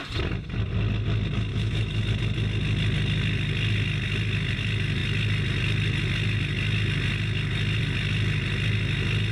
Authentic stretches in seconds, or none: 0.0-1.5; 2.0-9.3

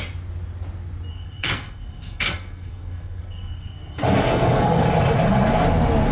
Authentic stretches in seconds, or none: 0.0-1.1; 4.8-6.1

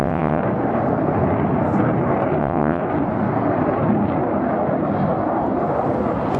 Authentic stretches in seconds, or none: 0.4-2.4; 2.8-6.4